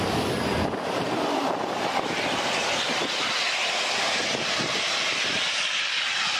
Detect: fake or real fake